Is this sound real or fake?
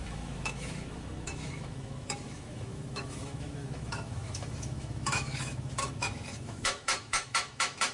fake